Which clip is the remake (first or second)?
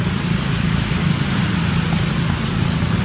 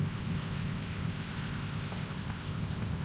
second